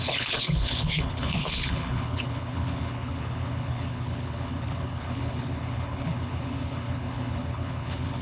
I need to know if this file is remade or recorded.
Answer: remade